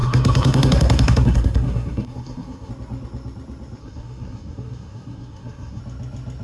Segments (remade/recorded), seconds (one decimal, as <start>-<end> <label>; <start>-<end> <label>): 0.0-2.7 remade; 2.7-3.8 recorded; 3.8-5.8 remade; 5.8-6.4 recorded